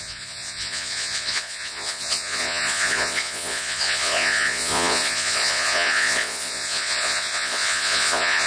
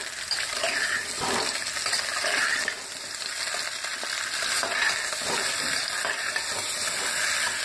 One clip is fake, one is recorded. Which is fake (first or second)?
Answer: first